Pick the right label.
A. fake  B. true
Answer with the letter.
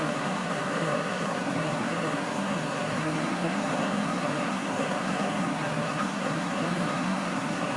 A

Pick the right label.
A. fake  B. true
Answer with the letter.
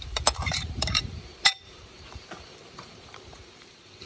A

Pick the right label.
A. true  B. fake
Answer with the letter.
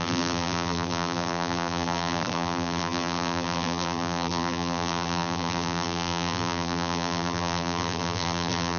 B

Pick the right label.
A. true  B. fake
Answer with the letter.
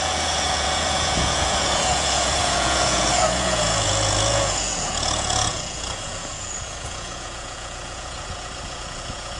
B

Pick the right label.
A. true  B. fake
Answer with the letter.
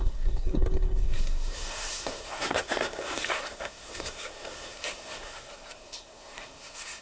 B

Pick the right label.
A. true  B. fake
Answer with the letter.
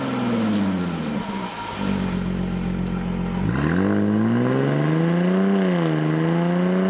A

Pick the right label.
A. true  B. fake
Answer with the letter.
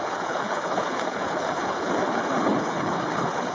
B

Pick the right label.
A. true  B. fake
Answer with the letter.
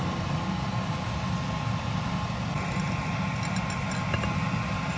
A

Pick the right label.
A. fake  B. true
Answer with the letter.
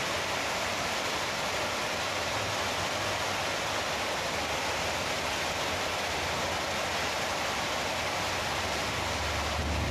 B